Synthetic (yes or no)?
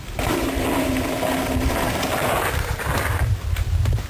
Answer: no